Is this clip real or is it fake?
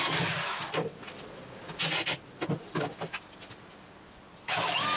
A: real